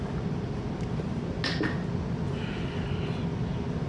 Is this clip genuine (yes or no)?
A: yes